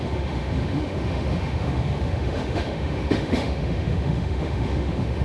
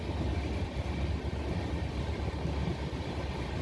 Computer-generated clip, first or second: first